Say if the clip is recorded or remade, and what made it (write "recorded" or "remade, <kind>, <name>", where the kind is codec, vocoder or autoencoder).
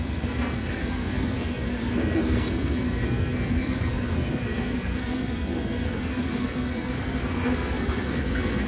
remade, codec, SNAC